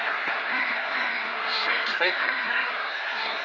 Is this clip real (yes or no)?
no